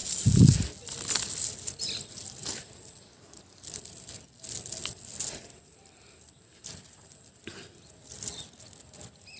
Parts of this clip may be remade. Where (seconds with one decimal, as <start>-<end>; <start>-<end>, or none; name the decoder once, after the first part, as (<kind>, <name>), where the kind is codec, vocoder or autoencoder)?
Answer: none